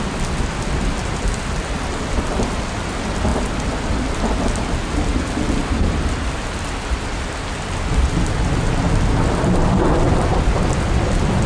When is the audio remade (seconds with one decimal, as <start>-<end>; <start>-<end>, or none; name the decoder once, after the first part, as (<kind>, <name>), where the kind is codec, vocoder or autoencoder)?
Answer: none